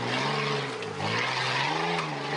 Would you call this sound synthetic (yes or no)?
no